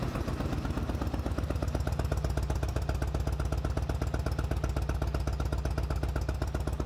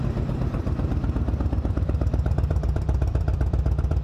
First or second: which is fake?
second